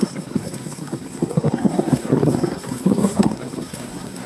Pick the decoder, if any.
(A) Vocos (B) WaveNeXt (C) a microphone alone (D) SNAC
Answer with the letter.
D